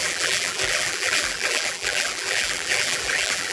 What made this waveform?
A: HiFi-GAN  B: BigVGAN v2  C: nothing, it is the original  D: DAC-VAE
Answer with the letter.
B